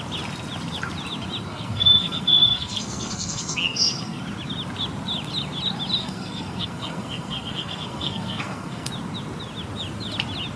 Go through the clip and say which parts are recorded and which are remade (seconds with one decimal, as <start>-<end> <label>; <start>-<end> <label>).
0.0-1.5 recorded; 1.5-4.2 remade; 4.2-6.0 recorded; 6.0-8.9 remade; 8.9-10.6 recorded